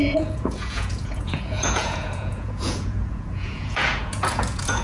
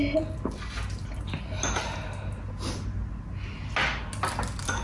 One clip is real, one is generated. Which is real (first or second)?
second